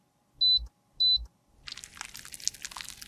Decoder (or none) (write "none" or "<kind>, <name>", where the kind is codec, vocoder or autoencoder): none